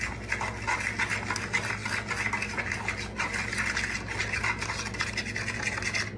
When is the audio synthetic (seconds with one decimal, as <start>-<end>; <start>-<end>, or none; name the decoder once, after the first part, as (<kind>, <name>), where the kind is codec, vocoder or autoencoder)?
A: none